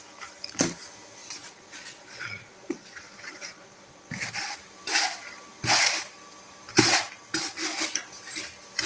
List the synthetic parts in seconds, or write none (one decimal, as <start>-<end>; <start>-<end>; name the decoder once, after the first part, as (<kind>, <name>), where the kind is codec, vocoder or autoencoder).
1.2-4.1 (vocoder, Vocos)